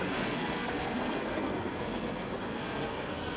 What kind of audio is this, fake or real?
fake